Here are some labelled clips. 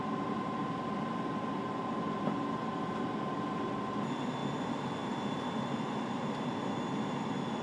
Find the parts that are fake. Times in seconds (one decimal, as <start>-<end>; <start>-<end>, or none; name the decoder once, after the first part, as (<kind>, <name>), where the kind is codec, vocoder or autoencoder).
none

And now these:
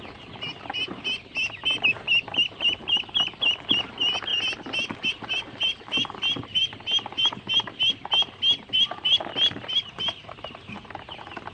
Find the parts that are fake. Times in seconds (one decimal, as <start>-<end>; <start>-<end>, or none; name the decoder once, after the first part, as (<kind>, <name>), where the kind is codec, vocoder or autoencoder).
none

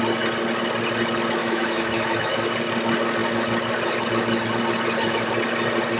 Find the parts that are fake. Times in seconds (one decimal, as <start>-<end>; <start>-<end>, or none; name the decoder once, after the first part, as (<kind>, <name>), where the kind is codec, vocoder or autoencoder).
1.4-2.3 (autoencoder, DAC-VAE)

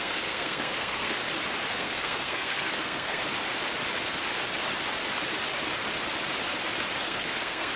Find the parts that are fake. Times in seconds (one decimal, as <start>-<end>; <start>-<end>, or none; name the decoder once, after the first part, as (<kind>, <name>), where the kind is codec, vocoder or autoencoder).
0.0-1.2 (codec, SNAC); 1.7-3.2; 7.0-7.8